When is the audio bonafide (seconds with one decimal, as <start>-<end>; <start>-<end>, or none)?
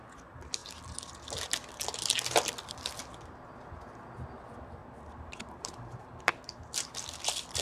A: 0.0-4.8; 6.2-7.6